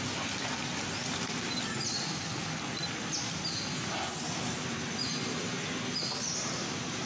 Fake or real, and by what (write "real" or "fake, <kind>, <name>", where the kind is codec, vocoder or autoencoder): real